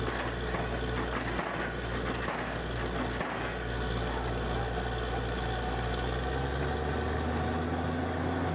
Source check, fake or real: real